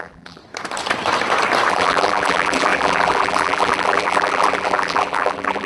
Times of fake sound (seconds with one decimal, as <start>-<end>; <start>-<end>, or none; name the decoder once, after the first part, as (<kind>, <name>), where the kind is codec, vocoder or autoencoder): 0.0-0.4 (vocoder, BigVGAN v2); 1.7-5.7